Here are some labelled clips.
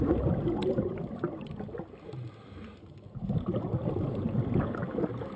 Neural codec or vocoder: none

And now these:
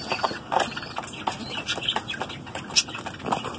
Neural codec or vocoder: none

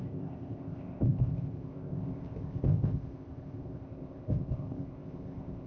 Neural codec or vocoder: codec, ZipCodec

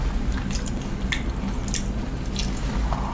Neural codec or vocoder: none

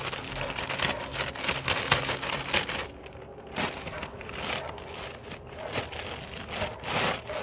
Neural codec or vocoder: none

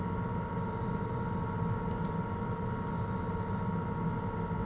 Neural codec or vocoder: none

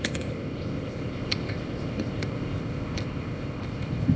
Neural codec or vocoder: codec, ZipCodec